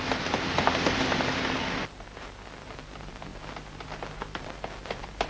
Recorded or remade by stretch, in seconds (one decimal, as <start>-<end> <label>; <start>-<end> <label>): 0.0-5.3 recorded